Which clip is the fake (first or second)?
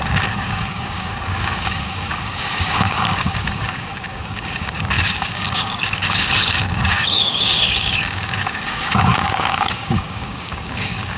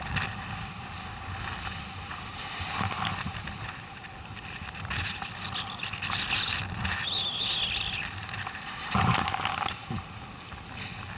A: first